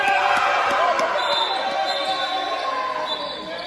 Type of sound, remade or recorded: recorded